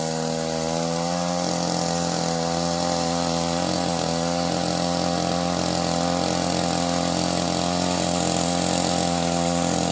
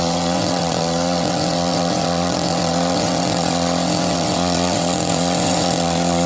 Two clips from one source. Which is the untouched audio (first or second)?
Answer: first